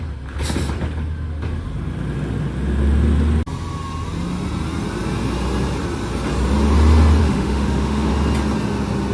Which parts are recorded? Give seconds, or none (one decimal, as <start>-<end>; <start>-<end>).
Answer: 0.0-7.2; 8.1-9.1